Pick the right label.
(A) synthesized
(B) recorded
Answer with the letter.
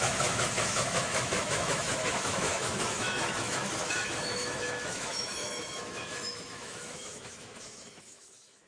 A